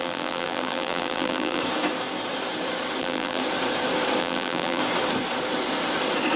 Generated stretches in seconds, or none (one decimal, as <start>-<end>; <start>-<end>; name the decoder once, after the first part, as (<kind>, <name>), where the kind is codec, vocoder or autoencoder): 0.0-1.6 (vocoder, BigVGAN v2); 3.0-3.4; 4.2-4.8